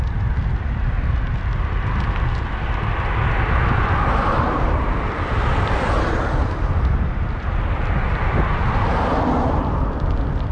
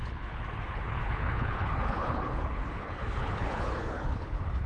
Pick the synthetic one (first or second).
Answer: second